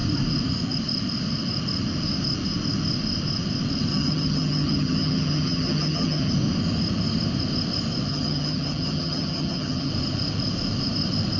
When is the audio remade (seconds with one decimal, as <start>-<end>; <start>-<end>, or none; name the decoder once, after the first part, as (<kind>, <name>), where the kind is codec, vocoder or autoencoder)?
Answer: 3.9-6.3 (vocoder, HiFi-GAN); 8.1-9.9